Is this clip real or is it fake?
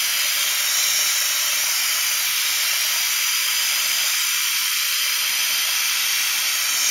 real